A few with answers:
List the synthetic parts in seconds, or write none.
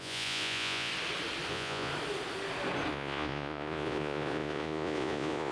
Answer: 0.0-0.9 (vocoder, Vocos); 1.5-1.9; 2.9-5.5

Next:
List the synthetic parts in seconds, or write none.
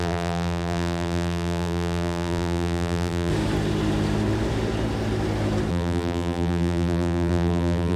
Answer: 0.0-3.3 (vocoder, BigVGAN v2); 5.7-8.0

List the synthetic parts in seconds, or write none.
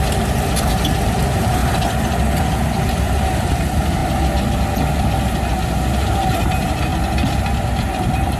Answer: 0.0-1.6 (vocoder, BigVGAN v2); 2.4-4.0; 6.3-6.9; 7.8-8.4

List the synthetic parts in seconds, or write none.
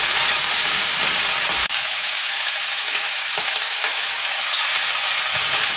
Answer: 1.6-4.7 (autoencoder, DAC-VAE)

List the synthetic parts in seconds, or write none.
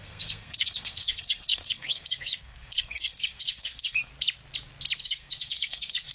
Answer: 0.0-4.1 (codec, SNAC); 5.0-6.1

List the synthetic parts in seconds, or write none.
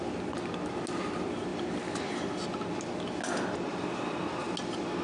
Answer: none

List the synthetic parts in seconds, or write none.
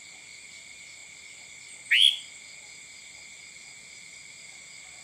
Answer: none